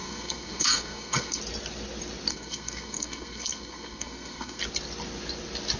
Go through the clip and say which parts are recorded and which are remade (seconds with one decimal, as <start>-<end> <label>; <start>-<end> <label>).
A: 0.0-1.4 remade; 1.4-2.3 recorded; 2.3-4.6 remade; 4.6-5.8 recorded